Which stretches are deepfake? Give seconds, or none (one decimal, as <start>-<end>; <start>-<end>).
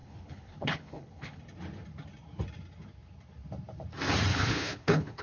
0.0-1.4; 4.3-5.2